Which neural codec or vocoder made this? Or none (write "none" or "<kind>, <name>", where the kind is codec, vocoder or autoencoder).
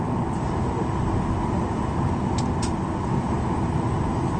none